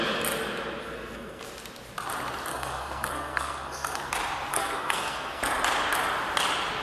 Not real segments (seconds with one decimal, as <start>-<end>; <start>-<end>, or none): 0.8-1.4; 2.5-4.1; 4.5-5.4